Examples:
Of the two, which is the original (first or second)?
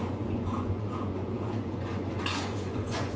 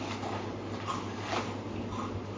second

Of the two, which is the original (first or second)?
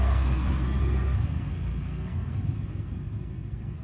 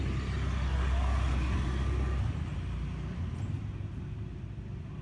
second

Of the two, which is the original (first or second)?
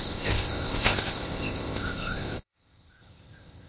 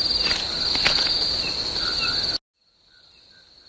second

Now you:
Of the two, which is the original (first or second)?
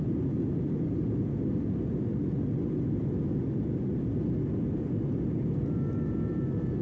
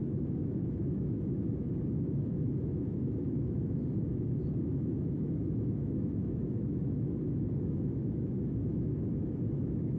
first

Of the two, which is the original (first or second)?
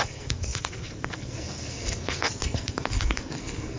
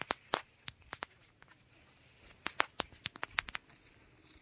second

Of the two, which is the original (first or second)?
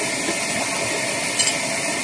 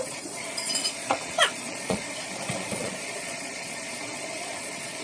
first